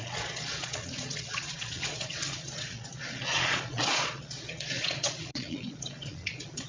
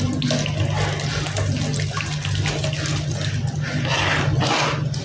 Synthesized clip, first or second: first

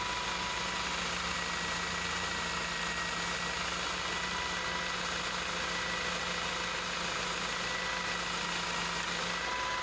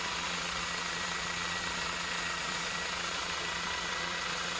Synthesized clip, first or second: second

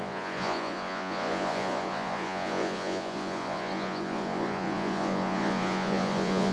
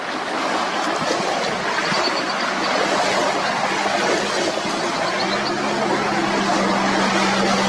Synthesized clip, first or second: first